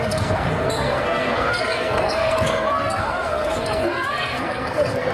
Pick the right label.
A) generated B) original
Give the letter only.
A